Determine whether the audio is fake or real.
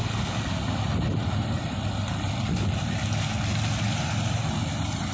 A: real